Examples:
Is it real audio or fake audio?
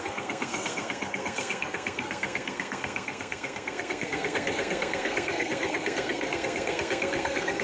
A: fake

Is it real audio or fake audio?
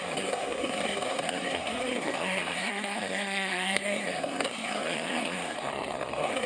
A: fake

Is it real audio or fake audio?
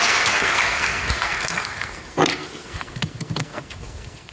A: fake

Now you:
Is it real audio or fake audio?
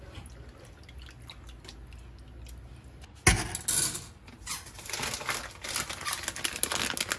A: real